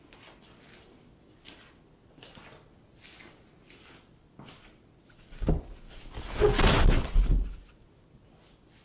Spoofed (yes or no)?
no